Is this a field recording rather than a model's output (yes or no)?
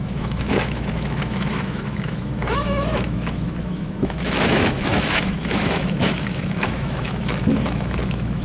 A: no